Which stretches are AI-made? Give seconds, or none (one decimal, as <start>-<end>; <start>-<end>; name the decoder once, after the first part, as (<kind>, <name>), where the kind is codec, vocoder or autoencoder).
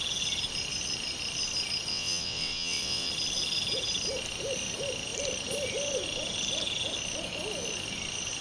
1.9-3.1 (vocoder, WaveNeXt)